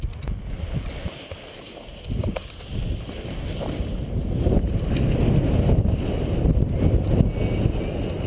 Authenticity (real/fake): real